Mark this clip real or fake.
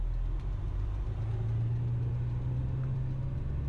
real